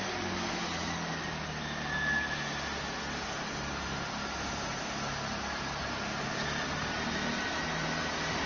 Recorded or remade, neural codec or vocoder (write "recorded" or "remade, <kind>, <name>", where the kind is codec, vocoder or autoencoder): recorded